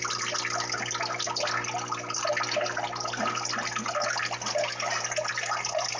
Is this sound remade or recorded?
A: recorded